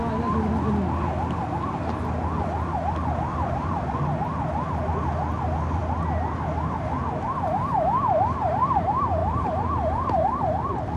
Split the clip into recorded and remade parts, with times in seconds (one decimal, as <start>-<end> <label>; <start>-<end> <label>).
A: 0.0-3.3 recorded; 3.3-3.9 remade; 3.9-9.2 recorded; 9.2-10.4 remade; 10.4-11.0 recorded